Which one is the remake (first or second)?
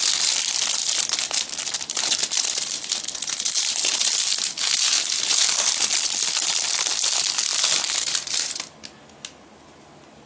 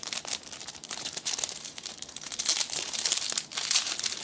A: second